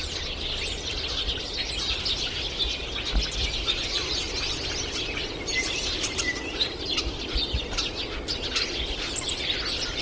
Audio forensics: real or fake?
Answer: real